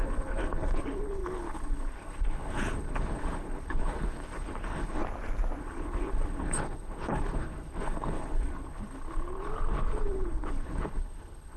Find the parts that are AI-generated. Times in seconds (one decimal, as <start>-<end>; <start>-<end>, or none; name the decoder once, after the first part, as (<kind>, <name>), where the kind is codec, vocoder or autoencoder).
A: 0.0-5.0 (codec, HILCodec); 5.6-11.6